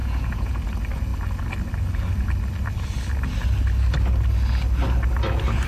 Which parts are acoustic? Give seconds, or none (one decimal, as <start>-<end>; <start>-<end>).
0.6-5.7